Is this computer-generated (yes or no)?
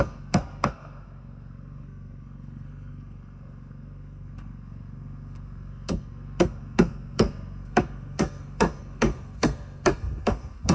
yes